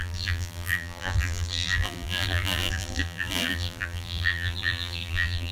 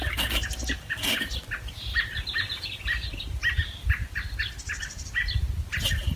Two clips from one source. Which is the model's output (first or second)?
first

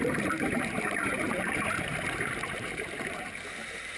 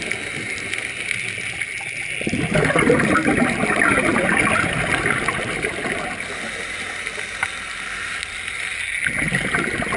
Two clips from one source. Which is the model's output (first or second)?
first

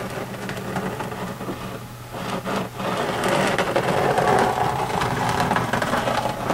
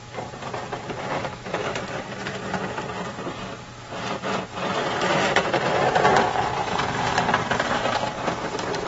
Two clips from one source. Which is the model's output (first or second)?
second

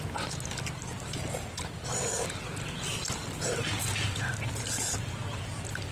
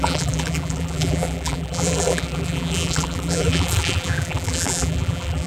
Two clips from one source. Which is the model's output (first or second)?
second